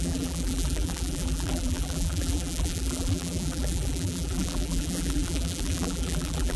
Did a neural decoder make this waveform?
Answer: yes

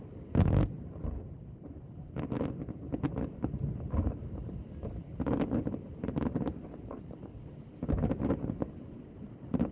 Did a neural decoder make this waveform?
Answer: no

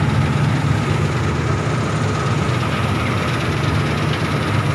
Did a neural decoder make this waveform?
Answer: no